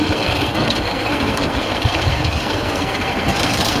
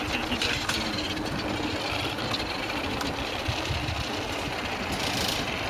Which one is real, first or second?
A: second